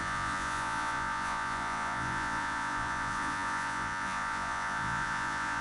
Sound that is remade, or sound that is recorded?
remade